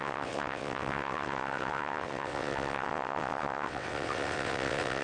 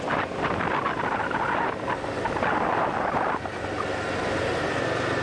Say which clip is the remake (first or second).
first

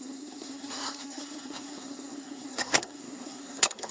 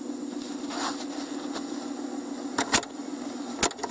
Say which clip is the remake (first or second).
first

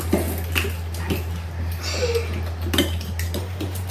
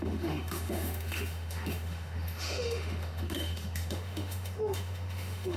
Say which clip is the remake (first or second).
second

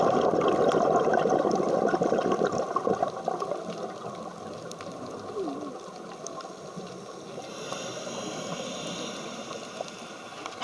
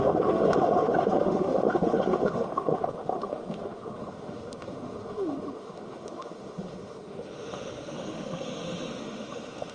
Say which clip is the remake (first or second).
second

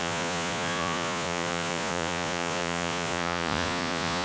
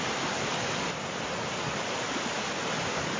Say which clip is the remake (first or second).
first